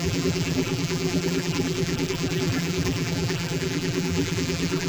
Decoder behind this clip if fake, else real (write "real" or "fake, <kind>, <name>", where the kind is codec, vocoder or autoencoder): fake, vocoder, BigVGAN v2